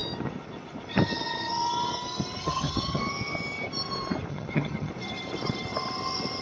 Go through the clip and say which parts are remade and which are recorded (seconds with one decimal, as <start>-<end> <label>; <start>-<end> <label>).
0.0-2.4 recorded; 2.4-3.0 remade; 3.0-4.3 recorded; 4.3-4.9 remade; 4.9-6.4 recorded